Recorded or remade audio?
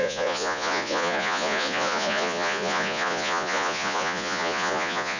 remade